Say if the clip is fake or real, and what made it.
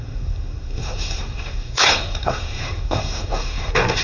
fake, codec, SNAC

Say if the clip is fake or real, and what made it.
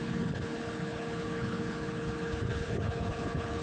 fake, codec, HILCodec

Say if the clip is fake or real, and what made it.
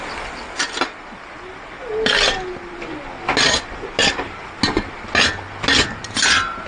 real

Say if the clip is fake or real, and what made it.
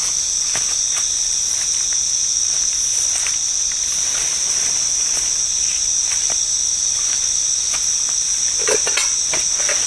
real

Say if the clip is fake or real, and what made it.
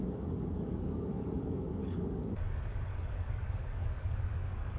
fake, codec, DAC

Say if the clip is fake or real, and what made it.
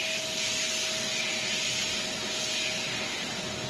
real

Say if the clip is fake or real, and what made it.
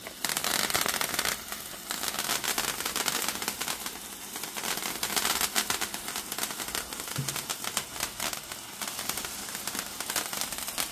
real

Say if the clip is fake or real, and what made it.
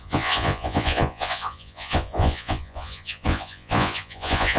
fake, vocoder, Vocos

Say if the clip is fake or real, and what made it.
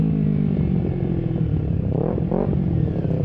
fake, vocoder, BigVGAN v2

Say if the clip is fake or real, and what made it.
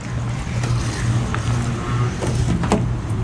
real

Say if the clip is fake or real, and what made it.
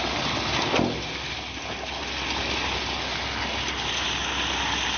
real